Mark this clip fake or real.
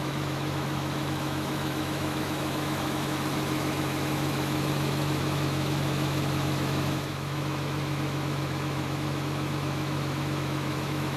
fake